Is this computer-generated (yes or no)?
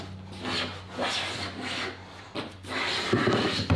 no